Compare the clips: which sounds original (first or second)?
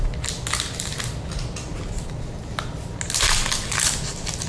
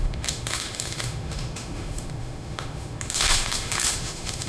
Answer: first